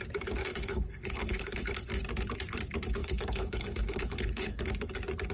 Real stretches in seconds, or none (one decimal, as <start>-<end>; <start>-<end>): 0.0-0.4; 1.9-3.0; 4.7-5.3